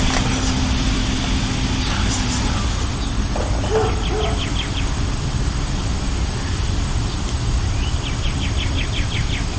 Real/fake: real